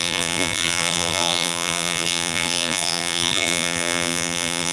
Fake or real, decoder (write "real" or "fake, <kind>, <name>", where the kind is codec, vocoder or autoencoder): fake, vocoder, BigVGAN v2